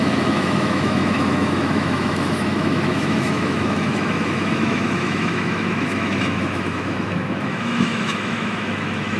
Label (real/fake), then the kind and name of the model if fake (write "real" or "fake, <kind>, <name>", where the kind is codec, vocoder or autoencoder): fake, autoencoder, DAC-VAE